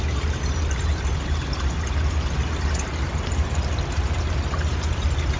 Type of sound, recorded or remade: recorded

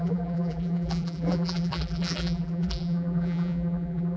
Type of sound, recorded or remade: remade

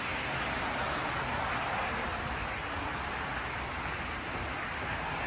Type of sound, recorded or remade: recorded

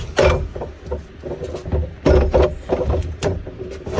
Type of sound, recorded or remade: recorded